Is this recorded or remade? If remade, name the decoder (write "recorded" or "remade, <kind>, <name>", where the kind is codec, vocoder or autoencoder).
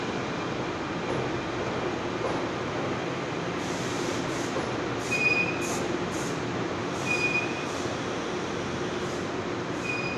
recorded